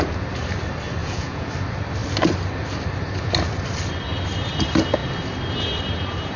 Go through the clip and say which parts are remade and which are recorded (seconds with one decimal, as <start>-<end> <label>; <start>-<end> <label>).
0.0-1.0 recorded; 1.0-1.5 remade; 1.5-6.4 recorded